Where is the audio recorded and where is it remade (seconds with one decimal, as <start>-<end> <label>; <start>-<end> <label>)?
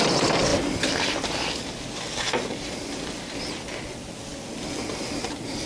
0.0-5.7 recorded